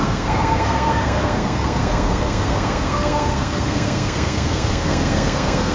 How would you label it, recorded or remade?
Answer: remade